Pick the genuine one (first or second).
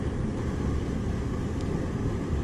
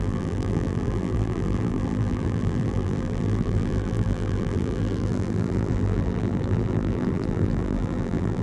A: first